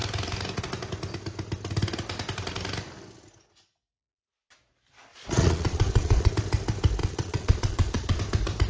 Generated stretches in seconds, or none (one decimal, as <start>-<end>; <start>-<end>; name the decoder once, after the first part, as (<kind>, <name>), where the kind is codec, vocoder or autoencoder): 5.1-6.3 (vocoder, Vocos); 7.0-8.2